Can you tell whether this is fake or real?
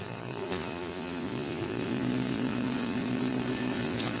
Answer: fake